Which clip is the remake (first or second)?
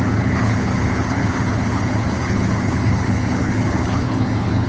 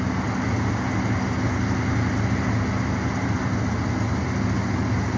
first